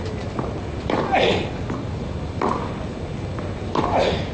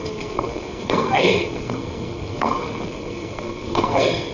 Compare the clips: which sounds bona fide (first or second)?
first